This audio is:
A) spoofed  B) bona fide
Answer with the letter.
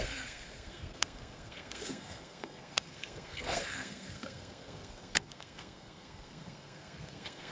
A